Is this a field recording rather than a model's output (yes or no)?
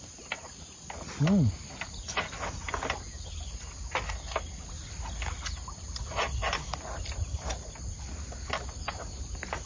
yes